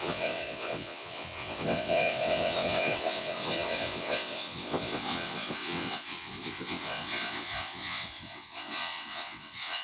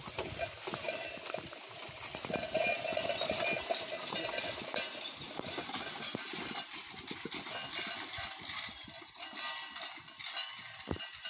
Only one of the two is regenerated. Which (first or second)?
first